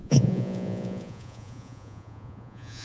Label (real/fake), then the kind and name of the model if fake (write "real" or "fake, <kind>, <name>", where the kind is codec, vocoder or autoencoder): fake, vocoder, Vocos